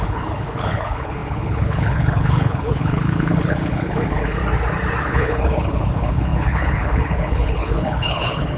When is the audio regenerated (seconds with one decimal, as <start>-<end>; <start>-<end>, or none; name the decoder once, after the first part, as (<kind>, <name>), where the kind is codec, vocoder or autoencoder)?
0.0-4.4 (codec, HILCodec); 5.0-8.6